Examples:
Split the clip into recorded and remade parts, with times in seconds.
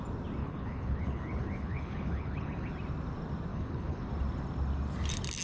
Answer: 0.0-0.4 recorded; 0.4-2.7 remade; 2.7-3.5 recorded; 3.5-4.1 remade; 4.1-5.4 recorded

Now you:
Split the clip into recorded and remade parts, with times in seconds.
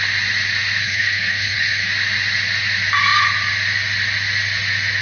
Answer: 0.0-0.8 recorded; 0.8-1.9 remade; 1.9-5.0 recorded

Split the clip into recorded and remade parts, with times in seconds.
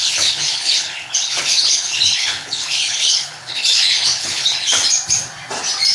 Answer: 0.0-4.8 remade; 4.8-5.9 recorded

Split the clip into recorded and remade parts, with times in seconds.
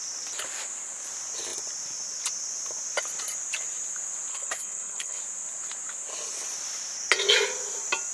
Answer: 0.0-4.3 recorded; 4.3-5.2 remade; 5.2-8.1 recorded